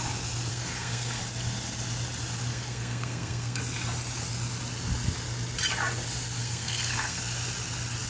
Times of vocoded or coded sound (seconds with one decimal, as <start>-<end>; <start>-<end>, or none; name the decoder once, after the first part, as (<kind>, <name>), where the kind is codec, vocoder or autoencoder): 0.5-1.2 (codec, SNAC); 2.5-3.6; 6.4-7.2